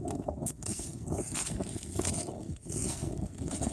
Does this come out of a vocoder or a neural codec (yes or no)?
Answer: yes